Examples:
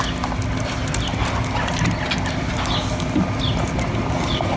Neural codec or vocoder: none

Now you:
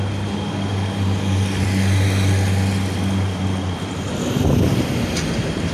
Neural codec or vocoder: none